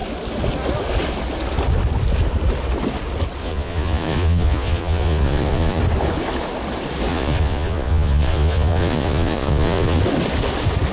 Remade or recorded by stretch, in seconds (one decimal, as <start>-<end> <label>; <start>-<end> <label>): 0.0-3.4 recorded; 3.4-5.8 remade; 5.8-7.1 recorded; 7.1-10.0 remade; 10.0-10.9 recorded